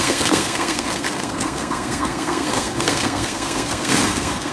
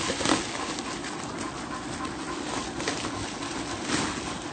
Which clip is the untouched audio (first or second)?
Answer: second